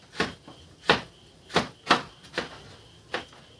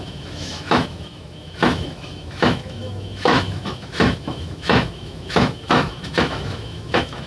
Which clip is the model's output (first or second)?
second